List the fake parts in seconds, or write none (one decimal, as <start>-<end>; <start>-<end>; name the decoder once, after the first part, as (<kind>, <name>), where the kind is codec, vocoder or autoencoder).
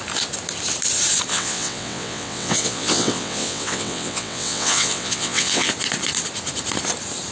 1.3-5.7 (vocoder, WaveNeXt)